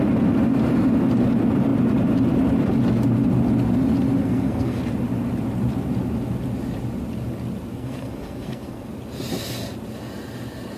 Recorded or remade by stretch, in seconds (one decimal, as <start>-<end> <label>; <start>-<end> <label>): 0.0-4.2 recorded; 4.2-4.8 remade; 4.8-7.7 recorded; 7.7-8.9 remade; 8.9-10.8 recorded